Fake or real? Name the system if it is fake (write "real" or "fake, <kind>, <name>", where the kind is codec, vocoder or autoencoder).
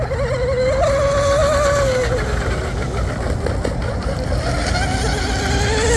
real